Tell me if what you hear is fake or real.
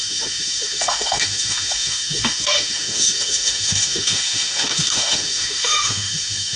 fake